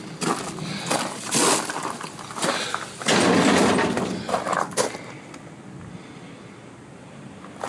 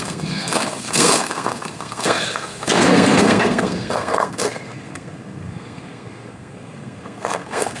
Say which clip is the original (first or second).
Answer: first